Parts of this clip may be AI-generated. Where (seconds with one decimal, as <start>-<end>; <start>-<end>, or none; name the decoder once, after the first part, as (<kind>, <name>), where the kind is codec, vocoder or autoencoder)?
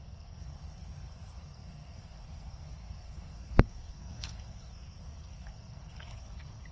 0.0-6.7 (codec, SNAC)